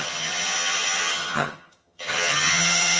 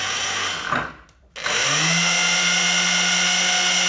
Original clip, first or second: second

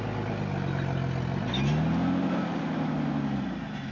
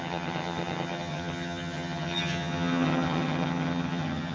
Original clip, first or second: first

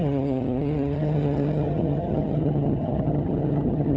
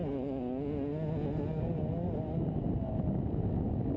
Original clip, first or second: second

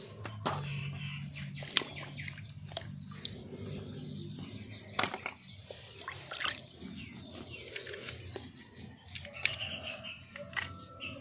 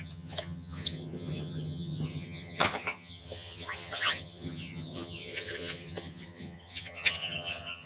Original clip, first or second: first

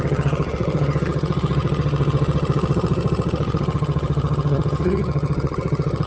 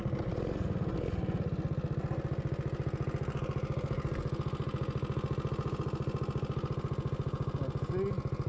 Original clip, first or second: second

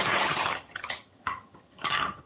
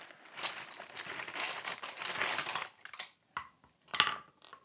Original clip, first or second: second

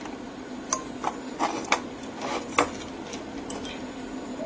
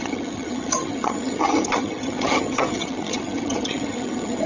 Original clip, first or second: first